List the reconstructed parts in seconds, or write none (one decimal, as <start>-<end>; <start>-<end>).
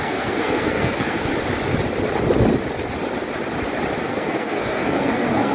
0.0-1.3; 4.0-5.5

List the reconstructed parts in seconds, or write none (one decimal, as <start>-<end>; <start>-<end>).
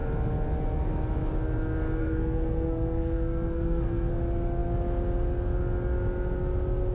2.0-4.1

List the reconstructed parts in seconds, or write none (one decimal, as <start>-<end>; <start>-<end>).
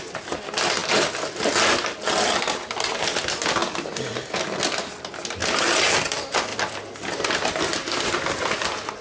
none